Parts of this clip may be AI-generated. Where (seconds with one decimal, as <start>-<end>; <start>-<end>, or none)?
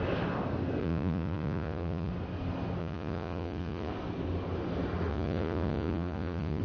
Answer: 0.8-2.1; 2.8-3.9; 5.1-6.6